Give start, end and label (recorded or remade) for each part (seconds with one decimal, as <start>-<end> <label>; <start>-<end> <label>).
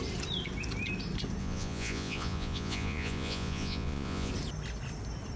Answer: 0.0-1.4 recorded; 1.4-4.3 remade; 4.3-5.4 recorded